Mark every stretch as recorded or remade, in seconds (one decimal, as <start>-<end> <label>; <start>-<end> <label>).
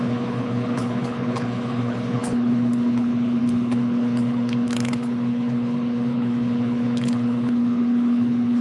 0.0-8.6 remade